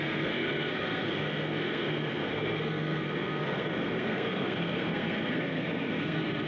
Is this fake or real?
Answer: fake